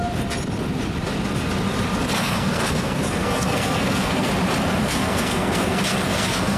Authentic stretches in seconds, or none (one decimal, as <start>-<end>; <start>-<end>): 0.0-2.2; 4.3-4.8